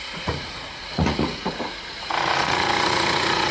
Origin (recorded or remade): remade